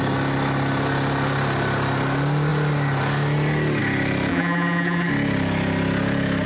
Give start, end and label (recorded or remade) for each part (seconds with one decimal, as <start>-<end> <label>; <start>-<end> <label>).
0.0-4.3 recorded; 4.3-5.1 remade; 5.1-6.5 recorded